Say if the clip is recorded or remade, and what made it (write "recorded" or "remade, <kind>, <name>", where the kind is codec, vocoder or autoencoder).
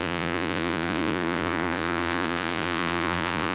remade, vocoder, Vocos